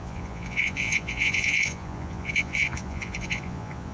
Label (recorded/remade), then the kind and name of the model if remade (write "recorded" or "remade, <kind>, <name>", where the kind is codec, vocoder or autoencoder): remade, vocoder, Vocos